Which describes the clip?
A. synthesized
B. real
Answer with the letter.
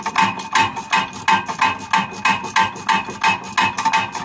B